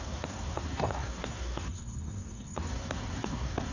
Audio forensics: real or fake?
fake